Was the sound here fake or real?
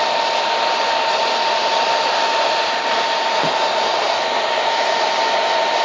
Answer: fake